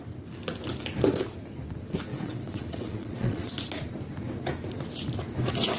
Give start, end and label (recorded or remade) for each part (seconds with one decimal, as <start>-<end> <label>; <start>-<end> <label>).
0.0-2.1 recorded; 2.1-3.5 remade; 3.5-5.8 recorded